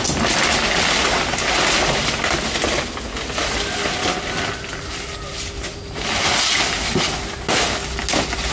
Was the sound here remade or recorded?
recorded